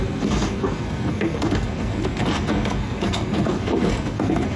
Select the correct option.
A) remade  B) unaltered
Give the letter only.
A